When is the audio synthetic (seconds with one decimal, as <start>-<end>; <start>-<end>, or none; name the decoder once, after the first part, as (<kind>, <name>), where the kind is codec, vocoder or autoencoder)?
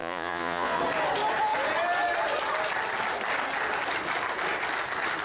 0.0-0.8 (vocoder, Vocos)